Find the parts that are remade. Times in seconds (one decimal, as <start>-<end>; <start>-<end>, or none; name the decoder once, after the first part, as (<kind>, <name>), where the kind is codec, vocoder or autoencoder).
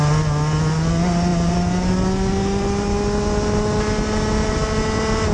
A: none